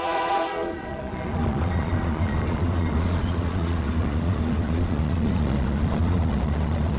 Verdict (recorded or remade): remade